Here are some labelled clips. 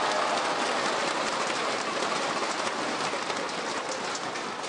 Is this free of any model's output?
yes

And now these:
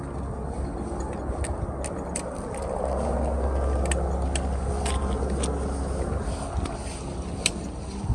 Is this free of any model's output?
yes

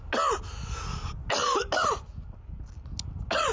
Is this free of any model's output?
yes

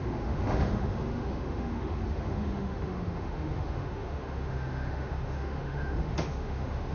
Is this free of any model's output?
no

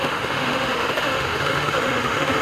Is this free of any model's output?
no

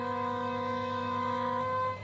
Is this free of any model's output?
no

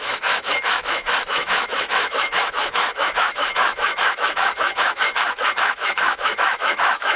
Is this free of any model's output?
no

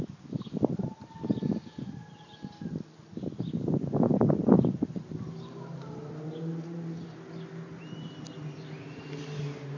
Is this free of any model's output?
yes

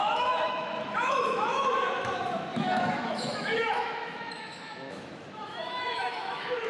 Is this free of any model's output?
no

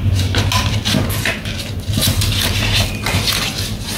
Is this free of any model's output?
yes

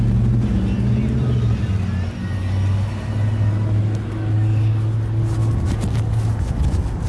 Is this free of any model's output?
yes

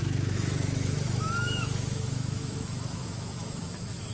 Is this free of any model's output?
no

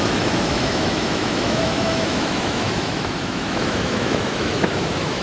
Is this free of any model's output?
no